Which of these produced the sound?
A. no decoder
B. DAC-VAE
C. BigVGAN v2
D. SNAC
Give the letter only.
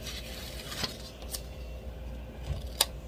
A